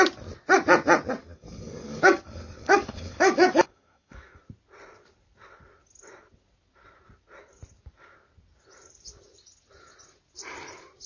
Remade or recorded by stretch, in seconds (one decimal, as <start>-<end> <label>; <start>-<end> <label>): 0.0-1.2 recorded; 1.2-4.4 remade; 4.4-11.1 recorded